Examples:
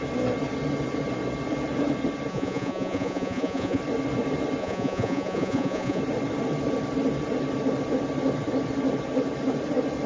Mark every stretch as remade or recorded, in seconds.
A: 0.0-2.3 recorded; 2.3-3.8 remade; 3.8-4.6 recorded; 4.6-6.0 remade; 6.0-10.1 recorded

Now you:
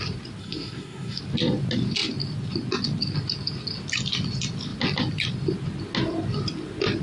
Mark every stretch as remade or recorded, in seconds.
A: 0.0-0.4 recorded; 0.4-1.2 remade; 1.2-7.0 recorded